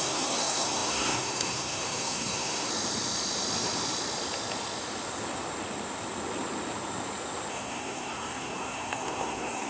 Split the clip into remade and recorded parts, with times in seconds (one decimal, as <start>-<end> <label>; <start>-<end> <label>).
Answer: 0.0-2.7 remade; 2.7-7.5 recorded; 7.5-9.7 remade